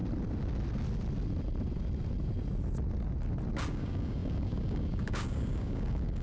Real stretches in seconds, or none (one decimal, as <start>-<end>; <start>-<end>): 0.0-3.7